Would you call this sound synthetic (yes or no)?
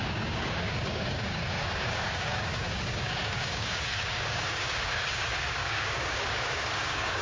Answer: yes